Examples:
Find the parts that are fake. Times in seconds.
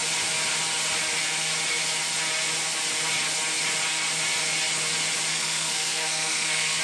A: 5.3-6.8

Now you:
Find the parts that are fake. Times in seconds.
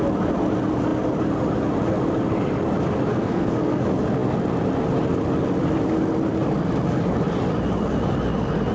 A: 3.1-3.8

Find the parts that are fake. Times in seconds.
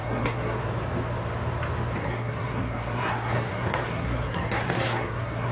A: 0.0-0.6; 2.0-5.5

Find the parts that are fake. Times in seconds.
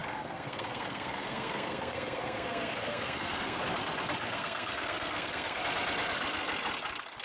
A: 0.0-3.6; 4.2-5.6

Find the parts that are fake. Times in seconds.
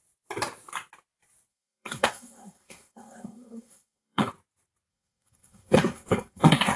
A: 1.5-4.3; 4.9-6.8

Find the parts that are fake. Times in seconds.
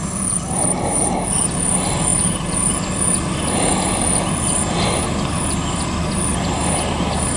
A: none